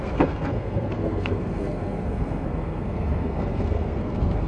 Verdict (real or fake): fake